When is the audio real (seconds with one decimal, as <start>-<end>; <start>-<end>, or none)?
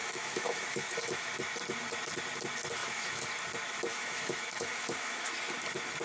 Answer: 1.3-2.8; 3.3-3.9; 5.3-6.0